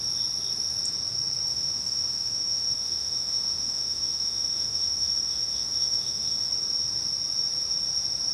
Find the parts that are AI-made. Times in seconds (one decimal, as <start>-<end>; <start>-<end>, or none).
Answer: 1.5-6.5